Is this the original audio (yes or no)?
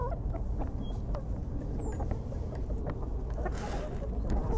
yes